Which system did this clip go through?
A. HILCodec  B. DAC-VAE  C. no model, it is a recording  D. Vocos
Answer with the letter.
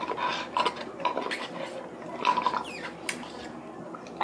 C